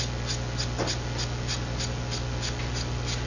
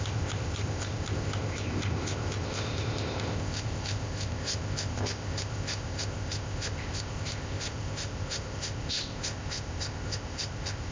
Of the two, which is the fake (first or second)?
second